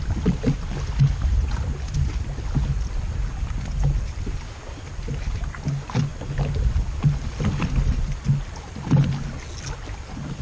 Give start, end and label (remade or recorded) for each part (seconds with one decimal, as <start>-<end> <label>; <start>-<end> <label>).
0.0-10.4 recorded